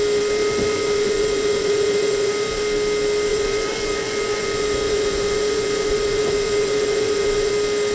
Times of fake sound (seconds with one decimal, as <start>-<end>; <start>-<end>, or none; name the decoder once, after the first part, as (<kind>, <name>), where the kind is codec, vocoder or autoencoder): 0.4-2.6 (vocoder, Vocos); 3.3-7.5